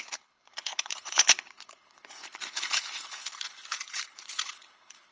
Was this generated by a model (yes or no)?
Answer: yes